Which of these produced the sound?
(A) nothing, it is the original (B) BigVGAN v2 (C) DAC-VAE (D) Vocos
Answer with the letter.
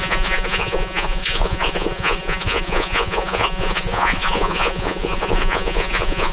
D